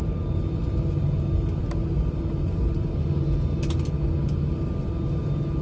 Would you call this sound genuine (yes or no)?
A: yes